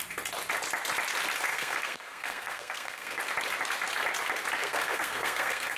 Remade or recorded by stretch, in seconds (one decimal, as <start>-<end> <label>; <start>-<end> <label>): 0.0-1.5 recorded; 1.5-3.2 remade; 3.2-4.6 recorded; 4.6-5.8 remade